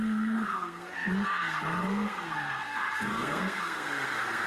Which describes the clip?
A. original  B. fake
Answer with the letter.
B